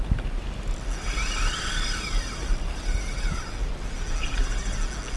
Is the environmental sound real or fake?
real